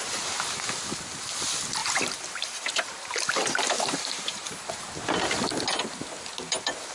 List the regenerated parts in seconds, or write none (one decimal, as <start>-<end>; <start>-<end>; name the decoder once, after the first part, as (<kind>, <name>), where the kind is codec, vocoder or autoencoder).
1.8-4.5 (vocoder, BigVGAN v2)